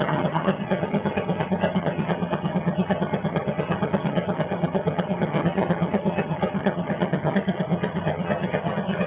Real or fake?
fake